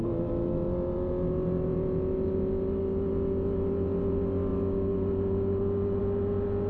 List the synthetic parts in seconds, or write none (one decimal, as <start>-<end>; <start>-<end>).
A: none